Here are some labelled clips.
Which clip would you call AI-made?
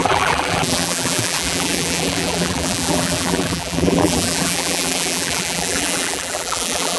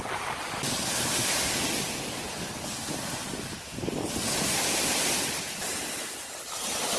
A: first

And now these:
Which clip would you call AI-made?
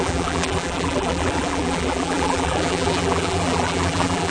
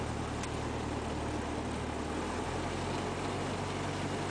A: first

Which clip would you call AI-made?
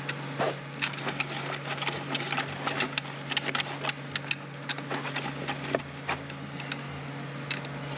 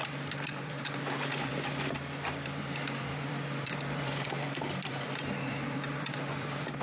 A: second